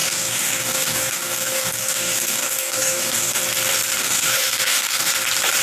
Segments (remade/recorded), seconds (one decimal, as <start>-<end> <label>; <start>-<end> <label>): 0.0-3.4 remade; 3.4-4.0 recorded; 4.0-5.1 remade; 5.1-5.6 recorded